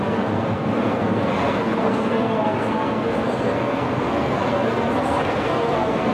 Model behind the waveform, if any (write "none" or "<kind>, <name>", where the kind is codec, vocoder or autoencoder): codec, SNAC